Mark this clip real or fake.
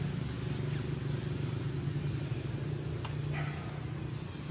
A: real